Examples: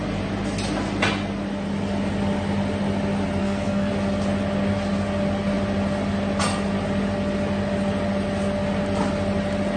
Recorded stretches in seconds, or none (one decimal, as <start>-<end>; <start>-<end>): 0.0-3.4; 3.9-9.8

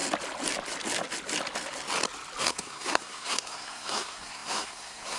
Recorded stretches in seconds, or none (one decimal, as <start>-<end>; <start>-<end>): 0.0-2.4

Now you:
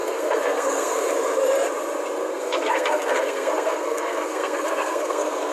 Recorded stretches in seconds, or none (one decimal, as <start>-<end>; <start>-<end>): 1.1-2.2